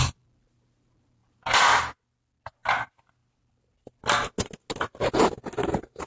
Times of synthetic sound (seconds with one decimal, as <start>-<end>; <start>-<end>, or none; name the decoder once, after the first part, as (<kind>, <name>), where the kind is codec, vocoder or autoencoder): none